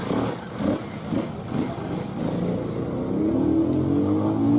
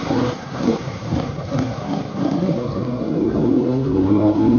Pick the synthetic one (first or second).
second